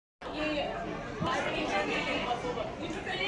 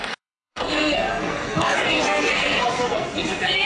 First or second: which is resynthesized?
second